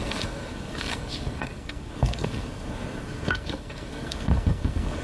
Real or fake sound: fake